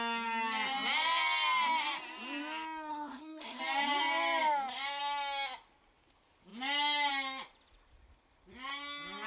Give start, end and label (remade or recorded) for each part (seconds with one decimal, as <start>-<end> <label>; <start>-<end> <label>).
0.0-2.9 recorded; 2.9-3.6 remade; 3.6-9.3 recorded